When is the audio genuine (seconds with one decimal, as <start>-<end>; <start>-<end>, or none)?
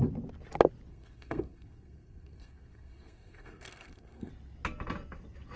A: 0.0-0.9; 4.3-5.6